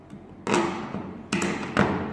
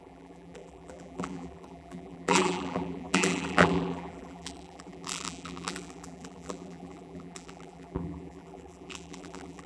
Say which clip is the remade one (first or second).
second